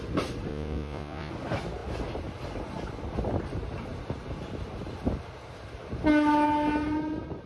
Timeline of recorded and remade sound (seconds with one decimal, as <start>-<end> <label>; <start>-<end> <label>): 0.0-0.5 recorded; 0.5-1.3 remade; 1.3-7.5 recorded

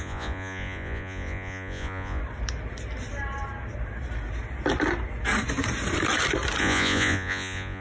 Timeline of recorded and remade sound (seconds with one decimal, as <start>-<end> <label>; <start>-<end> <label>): 0.0-2.2 remade; 2.2-6.6 recorded; 6.6-7.8 remade

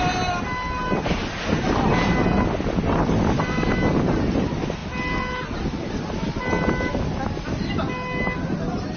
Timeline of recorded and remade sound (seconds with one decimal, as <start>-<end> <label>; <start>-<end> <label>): 0.0-9.0 recorded

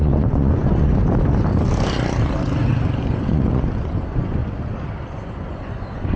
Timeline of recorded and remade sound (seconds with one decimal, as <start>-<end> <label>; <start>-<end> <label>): 0.0-0.9 remade; 0.9-3.1 recorded; 3.1-4.4 remade; 4.4-5.1 recorded; 5.1-6.2 remade

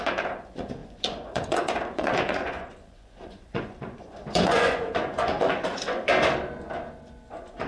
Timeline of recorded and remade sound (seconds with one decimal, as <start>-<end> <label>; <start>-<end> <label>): 0.0-6.1 remade; 6.1-7.3 recorded; 7.3-7.7 remade

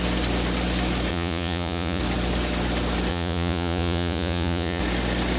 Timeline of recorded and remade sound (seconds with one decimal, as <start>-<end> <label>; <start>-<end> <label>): 0.0-1.1 recorded; 1.1-2.0 remade; 2.0-3.1 recorded; 3.1-4.8 remade; 4.8-5.4 recorded